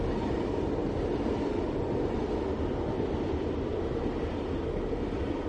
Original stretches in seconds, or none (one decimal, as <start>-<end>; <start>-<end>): 0.0-5.5